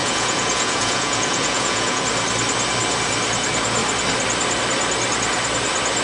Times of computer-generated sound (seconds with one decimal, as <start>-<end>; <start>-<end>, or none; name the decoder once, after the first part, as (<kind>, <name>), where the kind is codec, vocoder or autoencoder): 0.0-2.0 (vocoder, Vocos)